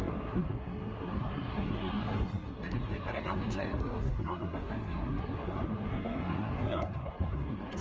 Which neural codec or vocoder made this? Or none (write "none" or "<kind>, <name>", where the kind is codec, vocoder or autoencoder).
codec, SNAC